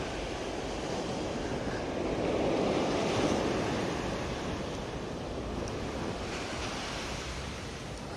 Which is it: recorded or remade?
recorded